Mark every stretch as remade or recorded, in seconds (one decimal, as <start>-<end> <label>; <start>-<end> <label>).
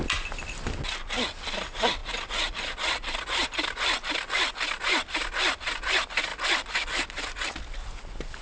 0.0-8.4 recorded